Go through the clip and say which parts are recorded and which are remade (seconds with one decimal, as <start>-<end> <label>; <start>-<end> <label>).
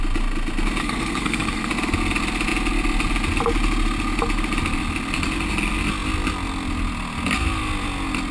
0.0-0.8 recorded; 0.8-1.7 remade; 1.7-8.3 recorded